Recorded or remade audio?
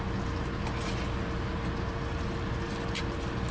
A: recorded